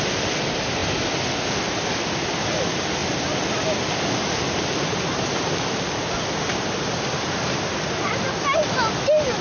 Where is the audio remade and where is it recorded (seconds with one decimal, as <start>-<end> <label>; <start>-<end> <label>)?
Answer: 0.0-9.4 recorded